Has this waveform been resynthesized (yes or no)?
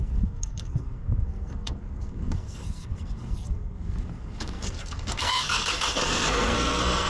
yes